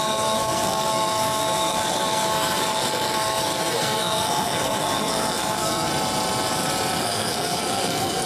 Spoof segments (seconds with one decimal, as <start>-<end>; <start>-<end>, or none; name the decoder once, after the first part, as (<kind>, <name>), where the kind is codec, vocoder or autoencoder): 0.0-5.9 (codec, SNAC); 7.0-8.3